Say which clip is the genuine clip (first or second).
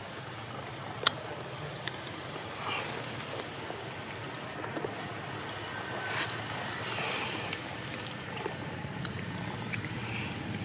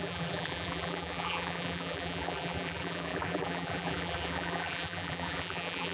first